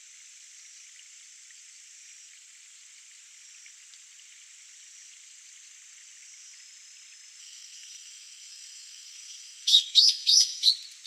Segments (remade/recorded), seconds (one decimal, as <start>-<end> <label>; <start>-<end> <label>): 0.0-7.4 recorded; 7.4-10.7 remade; 10.7-11.1 recorded